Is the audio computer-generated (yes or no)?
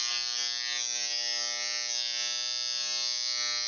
no